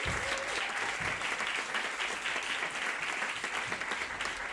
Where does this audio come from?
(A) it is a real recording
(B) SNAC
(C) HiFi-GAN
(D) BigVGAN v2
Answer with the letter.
A